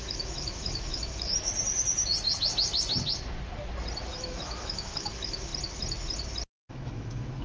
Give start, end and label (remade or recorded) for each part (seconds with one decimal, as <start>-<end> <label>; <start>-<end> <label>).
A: 0.0-1.5 remade; 1.5-4.1 recorded; 4.1-5.5 remade; 5.5-6.7 recorded; 6.7-7.4 remade